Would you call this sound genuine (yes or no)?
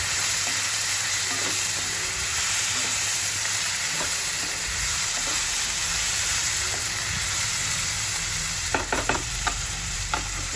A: no